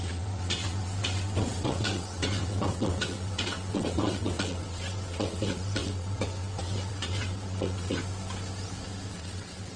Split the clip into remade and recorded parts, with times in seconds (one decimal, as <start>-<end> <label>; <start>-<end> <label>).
0.0-8.0 remade; 8.0-9.1 recorded; 9.1-9.8 remade